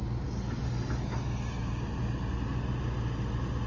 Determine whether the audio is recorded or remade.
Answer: recorded